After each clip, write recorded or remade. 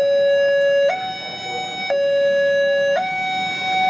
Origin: recorded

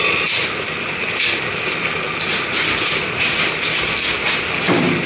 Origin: recorded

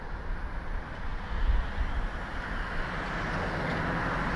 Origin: recorded